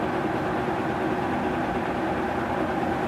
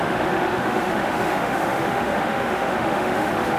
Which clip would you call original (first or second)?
first